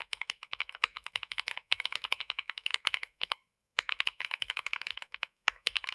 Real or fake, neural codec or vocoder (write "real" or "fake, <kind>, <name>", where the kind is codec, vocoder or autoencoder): fake, codec, SNAC